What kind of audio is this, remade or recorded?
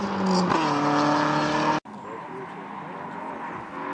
recorded